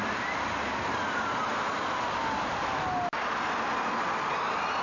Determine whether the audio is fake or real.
real